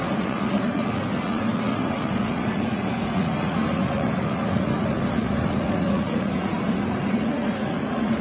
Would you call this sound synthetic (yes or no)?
yes